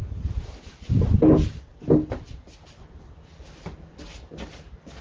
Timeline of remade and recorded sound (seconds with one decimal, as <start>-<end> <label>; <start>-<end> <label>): 0.0-5.0 recorded